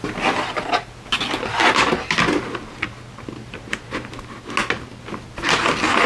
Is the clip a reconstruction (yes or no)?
no